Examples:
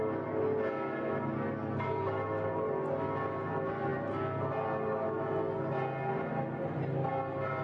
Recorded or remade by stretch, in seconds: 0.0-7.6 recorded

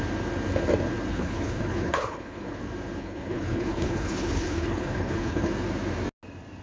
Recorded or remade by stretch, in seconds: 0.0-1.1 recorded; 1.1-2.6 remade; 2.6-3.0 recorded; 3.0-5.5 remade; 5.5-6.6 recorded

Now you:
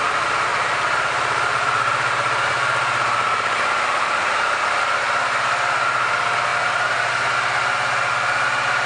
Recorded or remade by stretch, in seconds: 0.0-0.5 recorded; 0.5-4.8 remade; 4.8-8.9 recorded